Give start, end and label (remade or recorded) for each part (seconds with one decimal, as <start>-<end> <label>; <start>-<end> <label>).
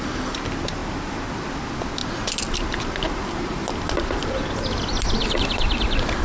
0.0-6.2 recorded